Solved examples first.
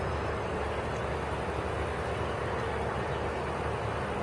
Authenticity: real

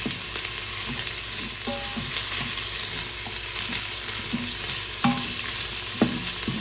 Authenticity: real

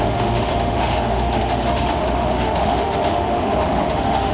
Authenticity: fake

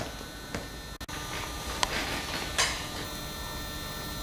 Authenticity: real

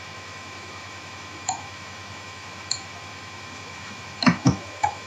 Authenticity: fake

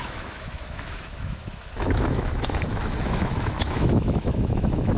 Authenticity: fake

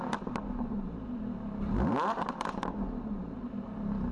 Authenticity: real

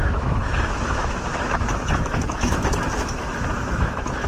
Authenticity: fake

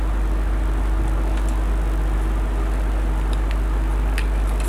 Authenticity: real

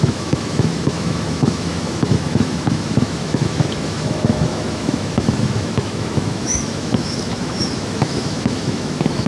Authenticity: fake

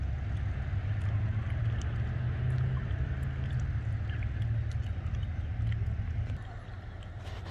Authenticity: real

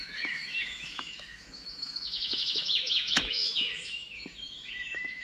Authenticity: fake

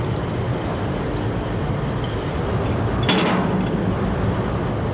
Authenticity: real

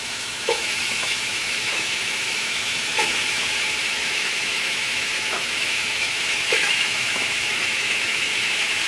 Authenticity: fake